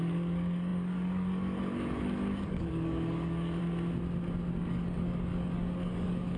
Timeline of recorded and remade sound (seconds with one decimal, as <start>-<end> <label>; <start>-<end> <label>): 0.0-3.6 remade; 3.6-4.6 recorded; 4.6-6.4 remade

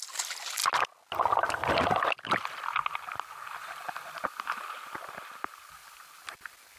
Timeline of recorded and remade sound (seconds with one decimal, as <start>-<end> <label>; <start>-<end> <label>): 0.0-6.8 recorded

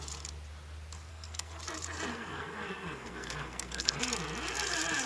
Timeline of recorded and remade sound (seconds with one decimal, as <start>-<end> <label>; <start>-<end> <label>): 0.0-1.1 recorded; 1.1-1.6 remade; 1.6-2.1 recorded; 2.1-4.0 remade; 4.0-5.1 recorded